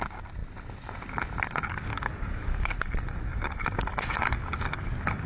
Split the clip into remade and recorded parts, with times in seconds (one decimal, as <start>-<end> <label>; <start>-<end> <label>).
0.0-1.9 recorded; 1.9-5.3 remade